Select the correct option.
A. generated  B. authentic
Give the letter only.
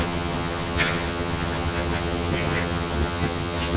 A